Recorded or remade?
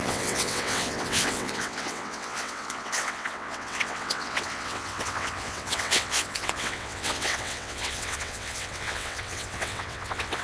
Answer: remade